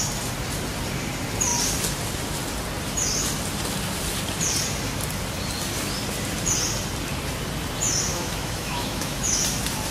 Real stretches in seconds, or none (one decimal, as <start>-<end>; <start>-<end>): 0.0-8.1; 9.4-9.9

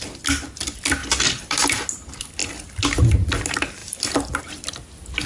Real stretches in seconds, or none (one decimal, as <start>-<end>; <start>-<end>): 0.0-1.0; 1.9-3.8; 4.4-5.3

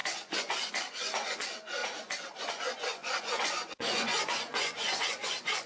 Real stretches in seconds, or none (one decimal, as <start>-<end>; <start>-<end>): 1.8-2.4

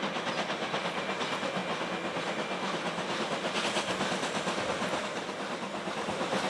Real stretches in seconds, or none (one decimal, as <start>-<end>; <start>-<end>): 0.0-6.5

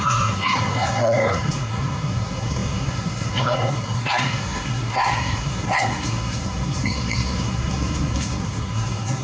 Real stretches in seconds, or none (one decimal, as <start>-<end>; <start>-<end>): none